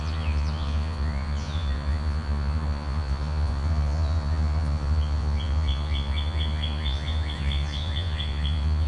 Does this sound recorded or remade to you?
remade